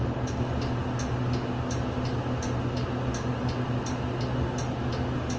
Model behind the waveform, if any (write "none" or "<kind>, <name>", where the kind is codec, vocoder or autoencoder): none